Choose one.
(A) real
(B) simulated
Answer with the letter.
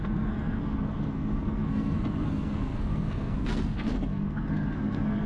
B